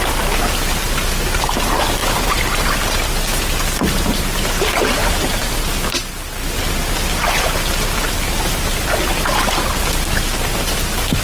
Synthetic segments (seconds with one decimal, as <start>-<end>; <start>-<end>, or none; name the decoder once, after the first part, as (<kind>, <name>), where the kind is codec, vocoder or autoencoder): 2.0-2.7 (vocoder, BigVGAN v2); 5.0-5.6